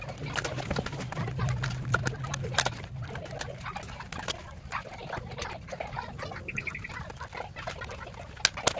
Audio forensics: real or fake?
real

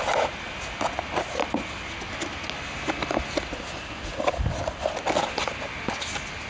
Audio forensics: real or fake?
real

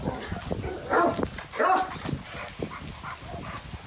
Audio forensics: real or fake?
real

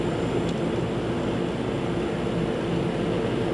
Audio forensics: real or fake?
real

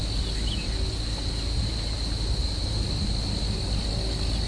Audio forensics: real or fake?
real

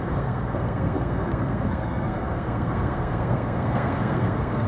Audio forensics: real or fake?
fake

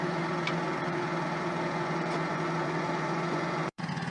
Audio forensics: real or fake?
fake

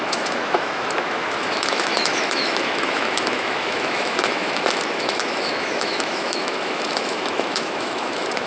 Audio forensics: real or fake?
fake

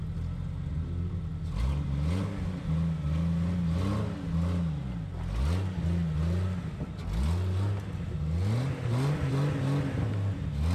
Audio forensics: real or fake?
real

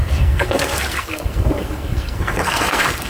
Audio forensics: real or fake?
fake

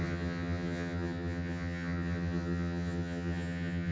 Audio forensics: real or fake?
fake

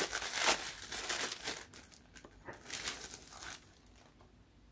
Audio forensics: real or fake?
real